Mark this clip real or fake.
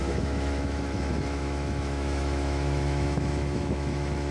fake